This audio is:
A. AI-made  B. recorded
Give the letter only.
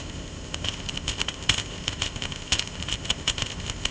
A